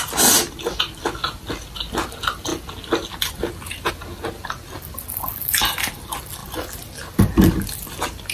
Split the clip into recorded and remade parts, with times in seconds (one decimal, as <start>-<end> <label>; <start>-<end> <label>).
0.0-8.3 recorded